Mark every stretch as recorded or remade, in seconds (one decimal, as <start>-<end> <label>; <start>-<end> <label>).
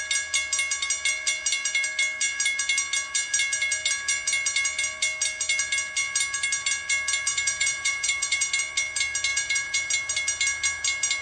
0.0-7.3 recorded; 7.3-8.5 remade; 8.5-9.3 recorded; 9.3-9.9 remade; 9.9-11.2 recorded